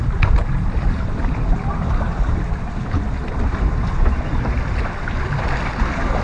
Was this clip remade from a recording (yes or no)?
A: no